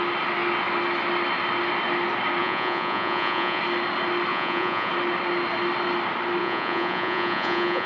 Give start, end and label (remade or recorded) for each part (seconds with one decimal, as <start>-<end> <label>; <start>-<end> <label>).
0.0-2.4 recorded; 2.4-3.6 remade; 3.6-4.3 recorded; 4.3-4.9 remade; 4.9-6.4 recorded; 6.4-7.9 remade